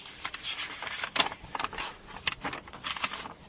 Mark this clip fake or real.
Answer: real